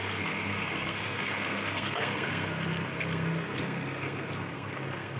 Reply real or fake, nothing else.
fake